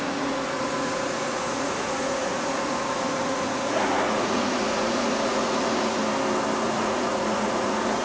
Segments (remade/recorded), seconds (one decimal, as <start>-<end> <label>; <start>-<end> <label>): 0.0-6.0 remade; 6.0-6.6 recorded; 6.6-8.0 remade